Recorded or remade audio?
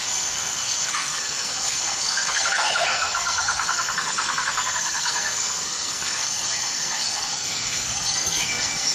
remade